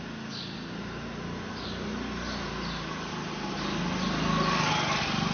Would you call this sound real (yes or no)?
yes